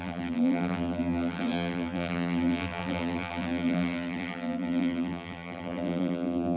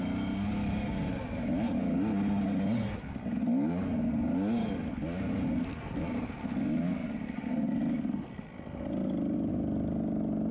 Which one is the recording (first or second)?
second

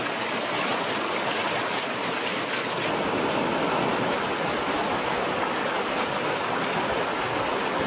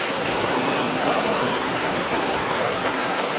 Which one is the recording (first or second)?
first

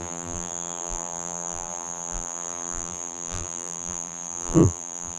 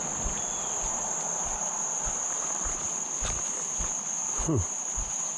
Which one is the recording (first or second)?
second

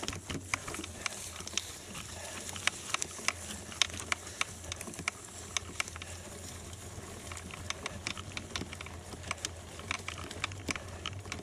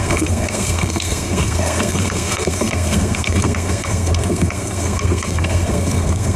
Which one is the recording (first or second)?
first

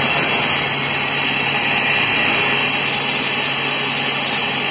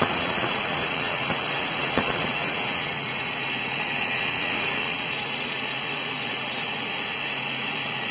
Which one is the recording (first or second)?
first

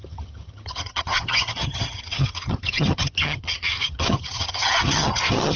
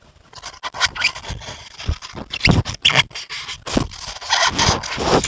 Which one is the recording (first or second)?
second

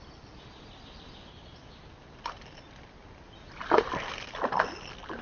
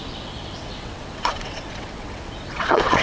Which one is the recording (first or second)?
first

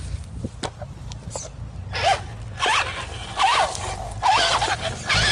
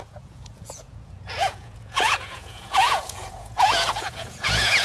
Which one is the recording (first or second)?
first